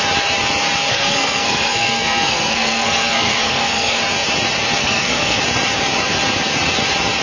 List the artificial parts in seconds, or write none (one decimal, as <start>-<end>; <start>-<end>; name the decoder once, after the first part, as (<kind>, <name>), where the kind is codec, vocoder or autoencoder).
0.9-4.0 (codec, SNAC); 4.8-5.4

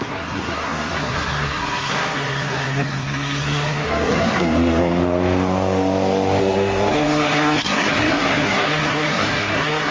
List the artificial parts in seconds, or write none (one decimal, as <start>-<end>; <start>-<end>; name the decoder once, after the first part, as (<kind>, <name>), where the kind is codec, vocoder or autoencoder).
0.0-5.0 (codec, SNAC); 6.4-9.9

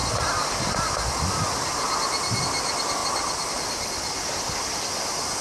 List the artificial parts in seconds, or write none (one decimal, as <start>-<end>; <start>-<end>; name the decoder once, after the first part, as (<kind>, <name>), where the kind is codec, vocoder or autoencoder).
none

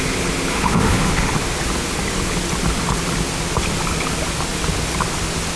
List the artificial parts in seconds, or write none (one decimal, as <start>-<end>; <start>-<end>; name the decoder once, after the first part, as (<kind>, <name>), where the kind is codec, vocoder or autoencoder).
0.5-1.3 (autoencoder, DAC-VAE)

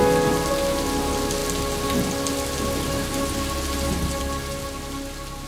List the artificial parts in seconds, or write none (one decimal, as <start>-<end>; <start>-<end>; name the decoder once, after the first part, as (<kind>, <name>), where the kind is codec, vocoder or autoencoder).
none

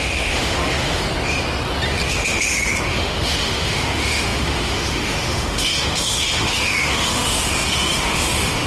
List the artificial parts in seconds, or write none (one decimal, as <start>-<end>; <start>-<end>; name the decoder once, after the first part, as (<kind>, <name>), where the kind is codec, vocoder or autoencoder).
0.0-1.0 (autoencoder, DAC-VAE); 2.1-8.7

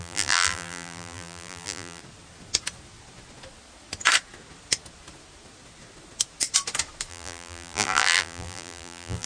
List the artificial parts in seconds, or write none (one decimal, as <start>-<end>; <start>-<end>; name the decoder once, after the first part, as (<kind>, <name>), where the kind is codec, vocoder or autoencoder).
0.0-2.0 (vocoder, BigVGAN v2); 7.1-9.3